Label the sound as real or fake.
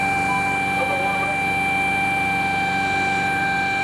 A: real